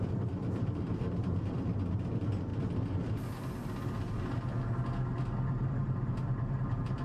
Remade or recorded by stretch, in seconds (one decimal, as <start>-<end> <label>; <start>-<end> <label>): 0.0-2.5 remade; 2.5-5.7 recorded; 5.7-7.0 remade

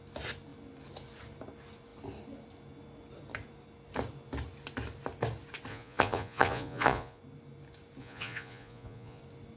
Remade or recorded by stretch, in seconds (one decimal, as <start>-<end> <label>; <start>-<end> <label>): 0.0-5.7 recorded; 5.7-7.2 remade; 7.2-8.0 recorded; 8.0-9.2 remade; 9.2-9.6 recorded

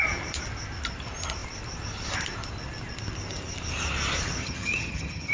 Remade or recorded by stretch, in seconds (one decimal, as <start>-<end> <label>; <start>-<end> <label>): 0.0-4.4 recorded; 4.4-5.3 remade

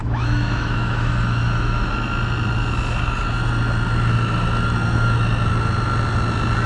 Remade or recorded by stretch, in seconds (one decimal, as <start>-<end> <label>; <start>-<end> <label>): 0.0-1.9 remade; 1.9-6.7 recorded